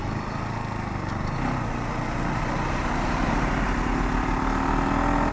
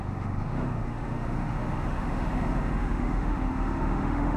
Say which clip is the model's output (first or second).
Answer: second